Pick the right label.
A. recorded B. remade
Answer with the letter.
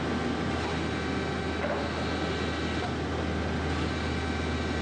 A